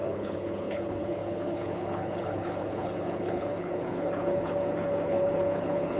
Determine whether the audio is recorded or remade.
remade